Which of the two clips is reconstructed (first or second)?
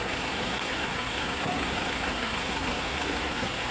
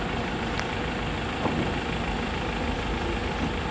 first